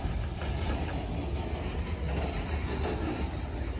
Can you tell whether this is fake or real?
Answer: real